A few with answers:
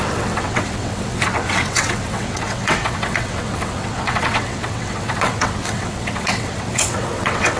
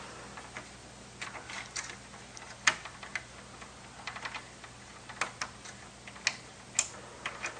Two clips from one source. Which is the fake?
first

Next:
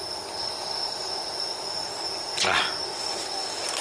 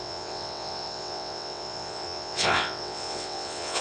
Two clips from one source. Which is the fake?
second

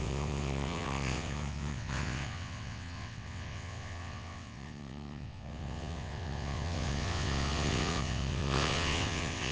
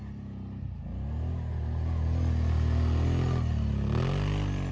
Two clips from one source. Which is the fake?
first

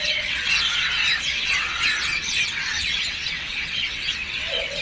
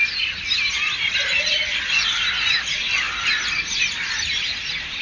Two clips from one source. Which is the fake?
first